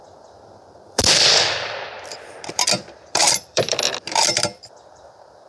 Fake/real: fake